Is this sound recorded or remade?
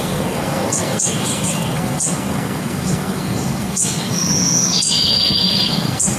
remade